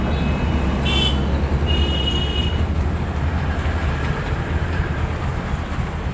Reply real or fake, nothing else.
real